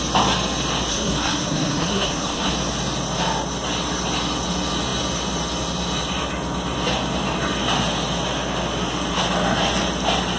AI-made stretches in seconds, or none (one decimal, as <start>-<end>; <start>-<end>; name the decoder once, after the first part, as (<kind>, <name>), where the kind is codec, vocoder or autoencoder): 0.9-2.5 (codec, SNAC)